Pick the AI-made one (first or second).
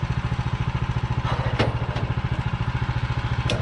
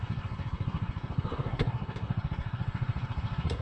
second